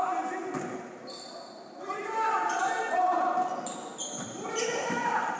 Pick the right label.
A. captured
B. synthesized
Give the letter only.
A